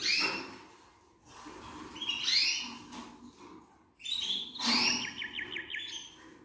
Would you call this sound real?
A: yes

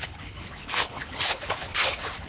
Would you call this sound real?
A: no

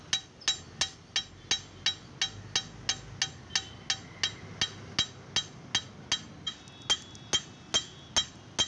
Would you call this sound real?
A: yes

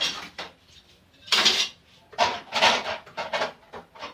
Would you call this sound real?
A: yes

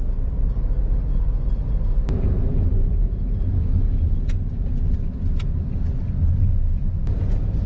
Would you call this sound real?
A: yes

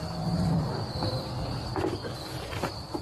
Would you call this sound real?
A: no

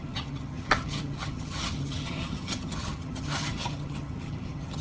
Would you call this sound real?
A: no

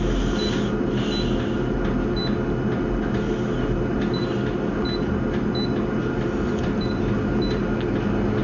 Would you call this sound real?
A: yes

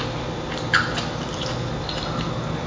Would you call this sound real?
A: yes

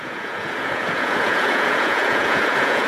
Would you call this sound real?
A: no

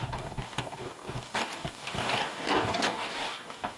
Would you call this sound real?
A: no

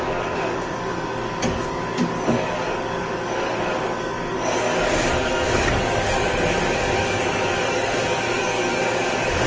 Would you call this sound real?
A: no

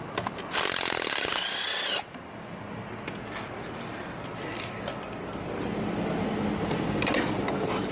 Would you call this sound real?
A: yes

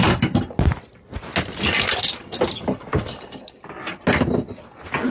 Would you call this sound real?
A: yes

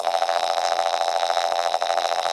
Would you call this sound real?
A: no